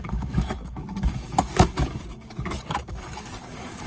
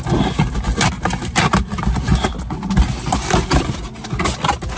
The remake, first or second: first